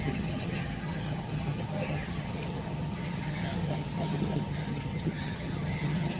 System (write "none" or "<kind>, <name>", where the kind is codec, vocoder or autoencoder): vocoder, HiFi-GAN